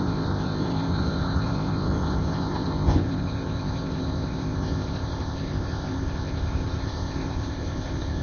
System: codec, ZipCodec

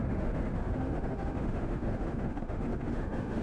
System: autoencoder, DAC-VAE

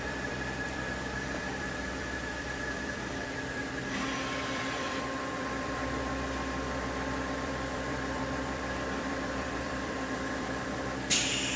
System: vocoder, BigVGAN v2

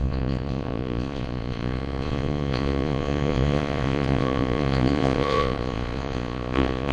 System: vocoder, Vocos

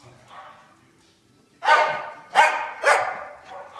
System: none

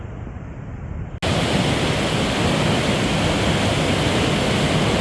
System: none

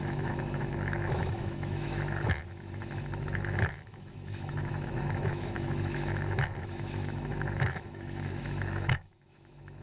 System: autoencoder, DAC-VAE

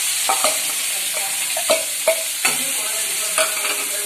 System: none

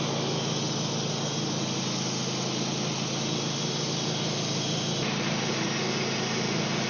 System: none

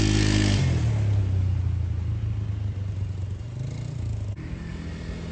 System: none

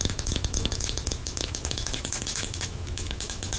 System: autoencoder, DAC-VAE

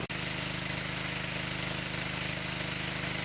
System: none